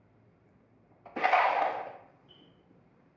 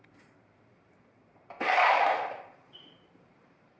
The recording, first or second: first